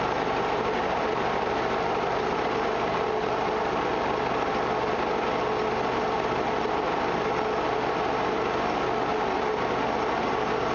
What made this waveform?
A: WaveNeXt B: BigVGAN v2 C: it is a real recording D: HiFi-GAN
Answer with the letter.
C